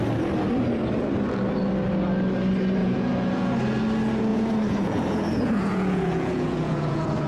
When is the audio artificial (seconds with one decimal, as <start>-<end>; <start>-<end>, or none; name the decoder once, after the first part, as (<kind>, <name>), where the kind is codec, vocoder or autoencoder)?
2.8-3.5 (vocoder, Vocos); 4.3-7.3